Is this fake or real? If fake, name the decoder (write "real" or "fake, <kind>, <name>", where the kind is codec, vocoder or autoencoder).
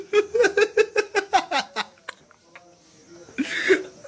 real